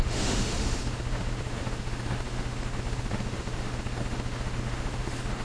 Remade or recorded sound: remade